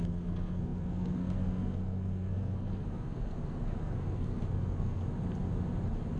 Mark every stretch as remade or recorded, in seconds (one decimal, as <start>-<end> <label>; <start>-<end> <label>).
0.0-5.0 remade; 5.0-6.2 recorded

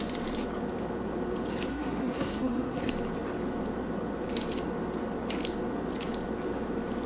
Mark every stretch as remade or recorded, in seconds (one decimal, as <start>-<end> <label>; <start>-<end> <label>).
0.0-1.7 recorded; 1.7-2.8 remade; 2.8-7.1 recorded

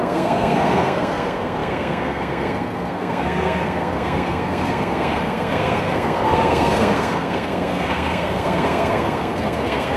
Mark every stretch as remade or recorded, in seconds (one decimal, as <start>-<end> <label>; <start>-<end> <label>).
0.0-10.0 remade

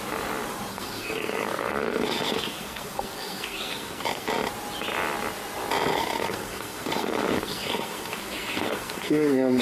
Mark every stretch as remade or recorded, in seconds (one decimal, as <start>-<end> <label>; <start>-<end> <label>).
0.0-0.7 recorded; 0.7-4.3 remade; 4.3-5.9 recorded; 5.9-9.6 remade

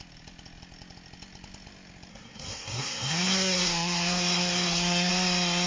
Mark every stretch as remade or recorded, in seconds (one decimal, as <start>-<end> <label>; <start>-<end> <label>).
0.0-2.1 recorded; 2.1-5.1 remade; 5.1-5.7 recorded

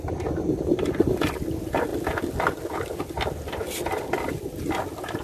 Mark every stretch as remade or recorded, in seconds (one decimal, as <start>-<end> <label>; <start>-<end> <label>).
0.0-5.2 recorded

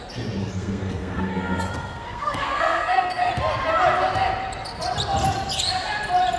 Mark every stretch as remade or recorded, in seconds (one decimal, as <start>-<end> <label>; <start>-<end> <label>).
0.0-0.4 recorded; 0.4-3.3 remade; 3.3-6.4 recorded